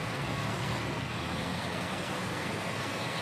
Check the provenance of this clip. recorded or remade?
remade